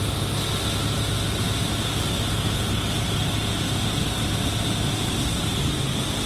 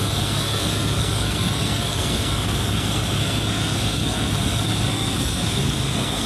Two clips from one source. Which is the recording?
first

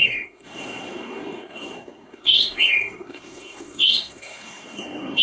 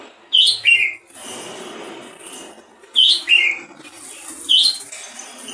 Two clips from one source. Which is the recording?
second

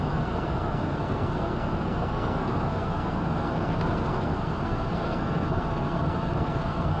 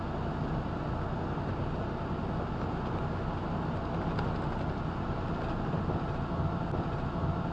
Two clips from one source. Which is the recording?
second